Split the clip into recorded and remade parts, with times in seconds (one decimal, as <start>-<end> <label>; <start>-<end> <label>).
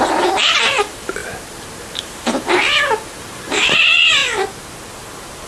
0.0-1.2 remade; 1.2-2.0 recorded; 2.0-2.6 remade; 2.6-3.2 recorded; 3.2-4.2 remade; 4.2-5.5 recorded